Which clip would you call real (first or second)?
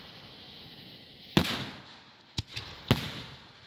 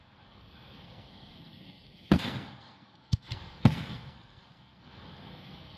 first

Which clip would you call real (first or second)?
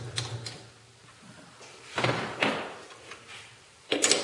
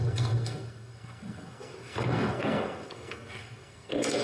first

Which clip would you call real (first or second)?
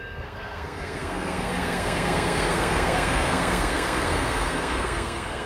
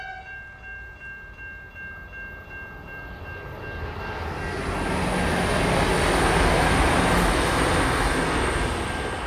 second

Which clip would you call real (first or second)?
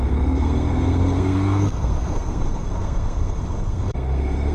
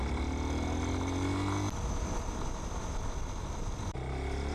second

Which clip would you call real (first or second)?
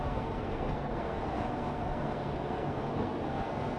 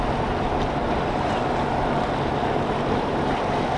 second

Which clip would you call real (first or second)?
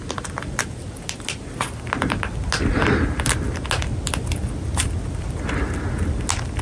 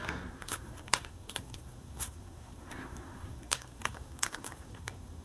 first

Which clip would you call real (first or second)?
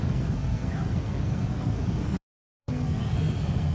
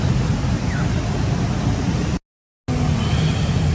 second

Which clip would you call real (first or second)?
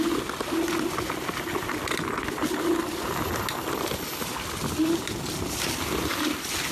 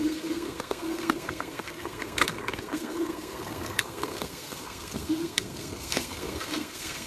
first